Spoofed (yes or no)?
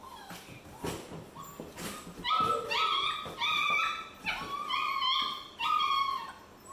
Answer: no